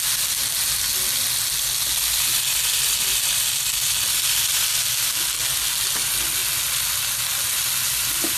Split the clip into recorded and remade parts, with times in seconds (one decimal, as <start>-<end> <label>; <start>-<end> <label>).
0.0-8.4 recorded

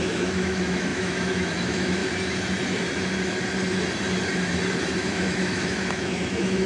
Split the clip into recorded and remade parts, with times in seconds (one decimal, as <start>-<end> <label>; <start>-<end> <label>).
0.0-2.0 remade; 2.0-5.0 recorded; 5.0-6.7 remade

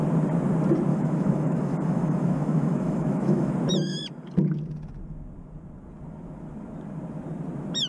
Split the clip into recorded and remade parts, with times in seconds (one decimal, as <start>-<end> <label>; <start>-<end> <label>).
0.0-0.9 recorded; 0.9-3.5 remade; 3.5-7.9 recorded

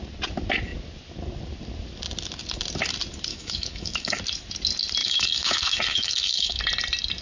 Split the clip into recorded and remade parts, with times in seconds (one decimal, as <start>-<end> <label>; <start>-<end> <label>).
0.0-3.3 recorded; 3.3-4.2 remade; 4.2-5.0 recorded; 5.0-6.6 remade; 6.6-7.2 recorded